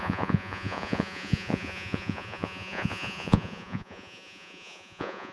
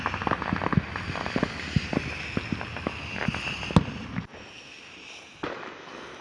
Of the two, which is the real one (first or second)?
second